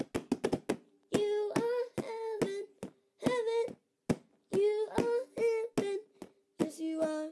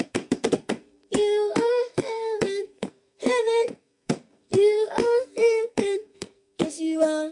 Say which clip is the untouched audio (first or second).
first